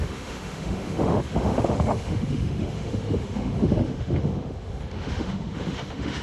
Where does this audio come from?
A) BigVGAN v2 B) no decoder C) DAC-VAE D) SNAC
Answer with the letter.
C